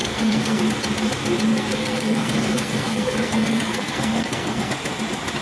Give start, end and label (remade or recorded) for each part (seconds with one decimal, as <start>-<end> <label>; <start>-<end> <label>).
0.0-0.6 remade; 0.6-1.5 recorded; 1.5-4.7 remade; 4.7-5.4 recorded